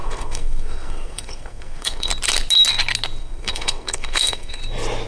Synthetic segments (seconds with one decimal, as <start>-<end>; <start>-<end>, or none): 0.0-2.1; 3.2-4.6